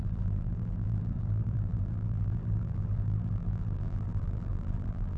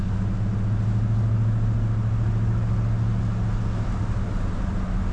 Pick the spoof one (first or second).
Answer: first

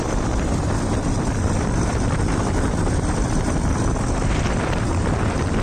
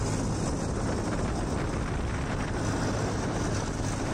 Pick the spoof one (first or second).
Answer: first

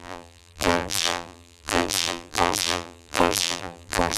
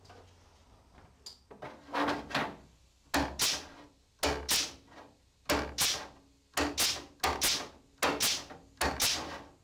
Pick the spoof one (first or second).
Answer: first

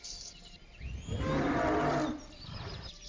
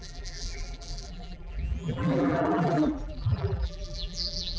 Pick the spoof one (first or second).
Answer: second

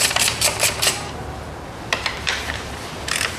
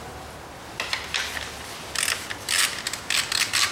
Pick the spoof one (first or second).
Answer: first